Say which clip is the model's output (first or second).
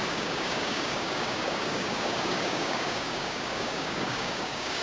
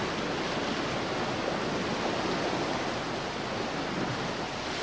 first